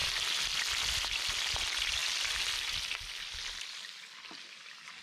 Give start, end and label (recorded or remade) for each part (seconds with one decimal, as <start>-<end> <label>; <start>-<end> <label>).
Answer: 0.0-5.0 recorded